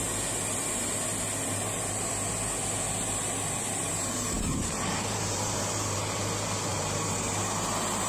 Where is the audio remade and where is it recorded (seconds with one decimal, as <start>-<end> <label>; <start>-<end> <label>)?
0.0-3.8 recorded; 3.8-6.0 remade; 6.0-6.7 recorded; 6.7-7.4 remade; 7.4-8.1 recorded

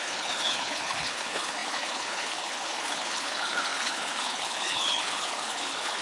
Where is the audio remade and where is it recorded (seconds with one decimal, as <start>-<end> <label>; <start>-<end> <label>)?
0.0-6.0 remade

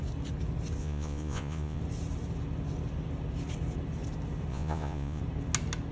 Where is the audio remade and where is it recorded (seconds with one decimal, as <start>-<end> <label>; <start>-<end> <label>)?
0.0-0.8 recorded; 0.8-1.8 remade; 1.8-4.5 recorded; 4.5-5.2 remade; 5.2-5.9 recorded

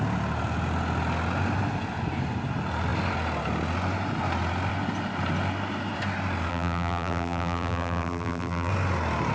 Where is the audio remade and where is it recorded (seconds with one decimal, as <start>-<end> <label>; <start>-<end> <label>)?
0.0-6.5 recorded; 6.5-8.7 remade; 8.7-9.3 recorded

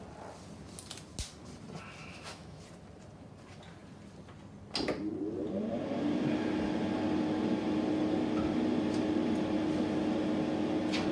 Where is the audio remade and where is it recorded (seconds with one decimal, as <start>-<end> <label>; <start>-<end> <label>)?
0.0-2.0 recorded; 2.0-2.6 remade; 2.6-11.1 recorded

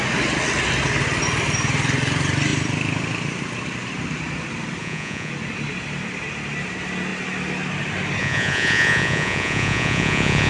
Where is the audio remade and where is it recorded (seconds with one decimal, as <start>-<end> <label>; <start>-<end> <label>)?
0.0-4.8 recorded; 4.8-5.3 remade; 5.3-8.2 recorded; 8.2-10.5 remade